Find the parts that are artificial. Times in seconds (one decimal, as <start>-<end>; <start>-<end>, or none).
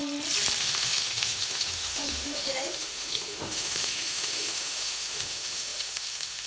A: 0.6-6.5